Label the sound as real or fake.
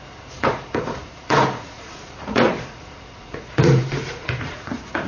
fake